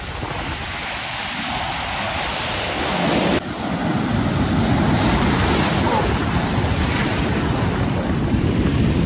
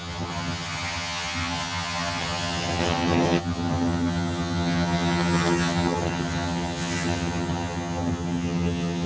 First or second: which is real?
first